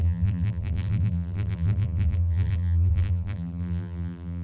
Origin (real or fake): fake